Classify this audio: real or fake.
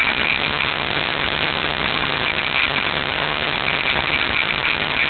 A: fake